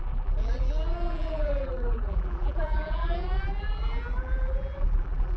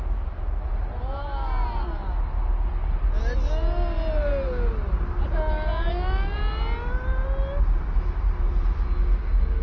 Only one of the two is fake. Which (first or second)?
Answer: first